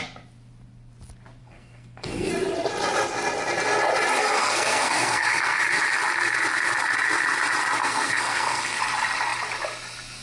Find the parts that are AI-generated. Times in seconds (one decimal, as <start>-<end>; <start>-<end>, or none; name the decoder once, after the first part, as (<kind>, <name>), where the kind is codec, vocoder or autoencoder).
1.4-2.3 (codec, SNAC); 4.2-5.6; 7.8-8.8